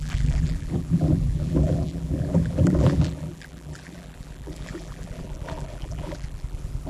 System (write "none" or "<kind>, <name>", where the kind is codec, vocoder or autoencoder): vocoder, BigVGAN v2